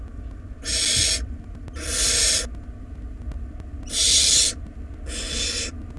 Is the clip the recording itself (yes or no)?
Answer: yes